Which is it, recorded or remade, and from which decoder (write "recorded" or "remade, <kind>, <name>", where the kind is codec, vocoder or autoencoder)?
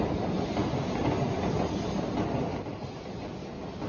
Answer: recorded